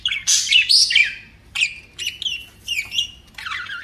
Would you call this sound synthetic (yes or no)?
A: no